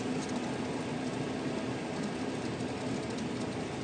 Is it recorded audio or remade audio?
recorded